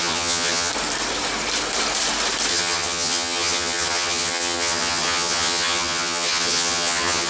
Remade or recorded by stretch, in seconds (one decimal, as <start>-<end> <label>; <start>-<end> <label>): 0.0-0.7 remade; 0.7-2.5 recorded; 2.5-7.3 remade